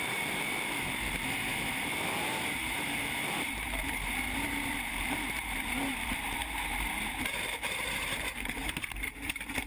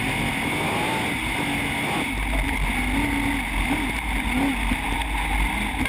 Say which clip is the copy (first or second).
first